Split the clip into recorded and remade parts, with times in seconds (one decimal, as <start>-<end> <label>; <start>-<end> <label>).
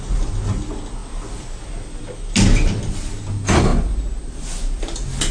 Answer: 0.0-5.3 recorded